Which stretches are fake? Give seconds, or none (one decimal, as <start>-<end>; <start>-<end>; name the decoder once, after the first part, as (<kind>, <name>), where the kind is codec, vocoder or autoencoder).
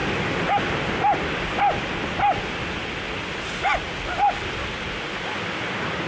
none